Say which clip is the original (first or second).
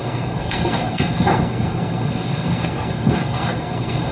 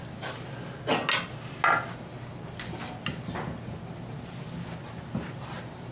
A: second